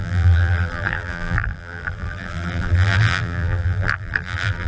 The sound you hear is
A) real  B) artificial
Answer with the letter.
B